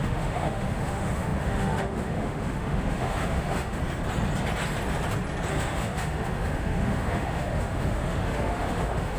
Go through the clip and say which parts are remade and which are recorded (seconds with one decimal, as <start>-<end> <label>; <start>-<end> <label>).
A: 0.0-3.8 remade; 3.8-5.5 recorded; 5.5-9.2 remade